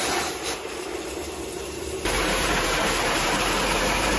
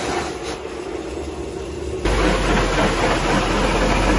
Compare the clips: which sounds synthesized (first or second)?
first